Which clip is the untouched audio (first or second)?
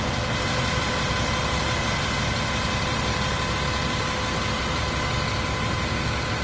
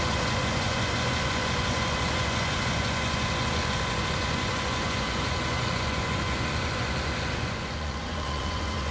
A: first